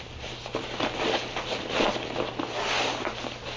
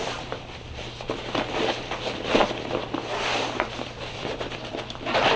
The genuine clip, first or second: first